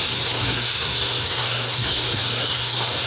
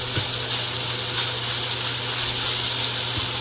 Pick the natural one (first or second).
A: second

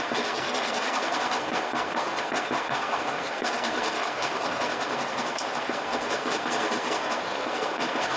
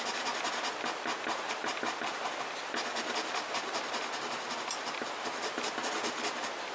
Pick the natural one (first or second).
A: second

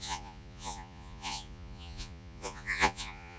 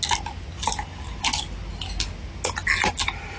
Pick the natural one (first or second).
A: second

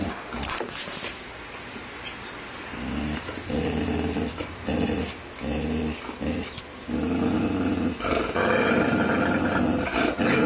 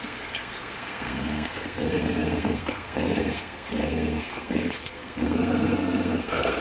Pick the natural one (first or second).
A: first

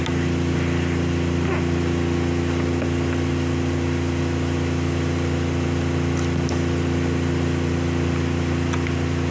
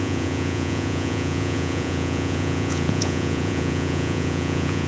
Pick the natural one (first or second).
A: first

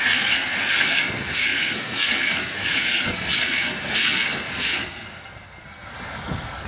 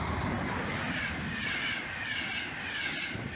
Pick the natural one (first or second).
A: second